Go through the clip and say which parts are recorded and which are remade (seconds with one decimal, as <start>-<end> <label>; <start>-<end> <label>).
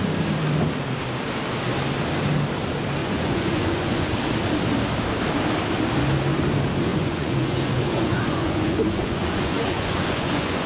0.0-3.0 recorded; 3.0-4.1 remade; 4.1-6.9 recorded; 6.9-10.7 remade